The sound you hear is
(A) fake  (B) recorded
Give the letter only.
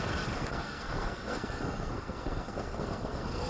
A